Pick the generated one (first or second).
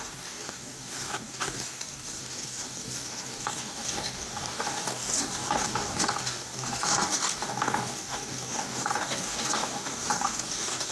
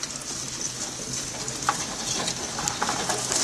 first